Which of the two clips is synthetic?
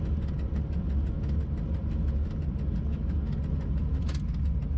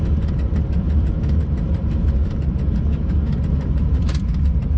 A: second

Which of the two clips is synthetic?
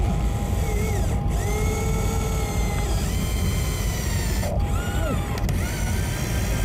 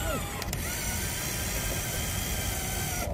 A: second